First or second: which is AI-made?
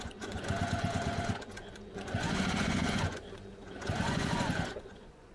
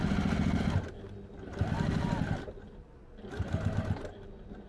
first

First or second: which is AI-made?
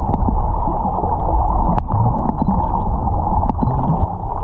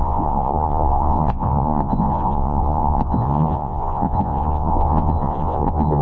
second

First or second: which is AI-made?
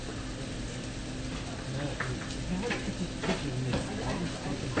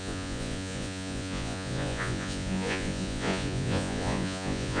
second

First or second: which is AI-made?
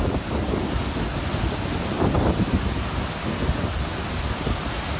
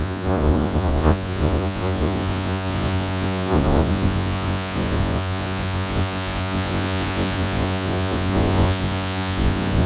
second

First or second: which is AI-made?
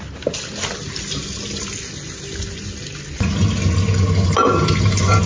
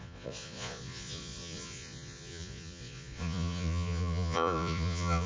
second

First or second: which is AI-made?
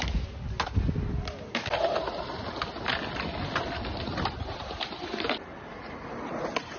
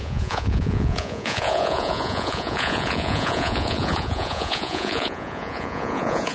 second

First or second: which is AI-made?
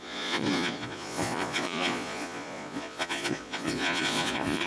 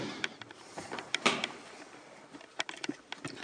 first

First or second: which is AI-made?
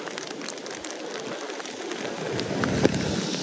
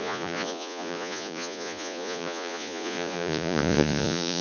second